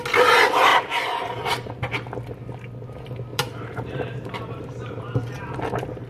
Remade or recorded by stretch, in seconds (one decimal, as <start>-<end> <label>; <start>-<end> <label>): 0.0-0.7 recorded; 0.7-1.7 remade; 1.7-3.3 recorded; 3.3-5.4 remade; 5.4-6.1 recorded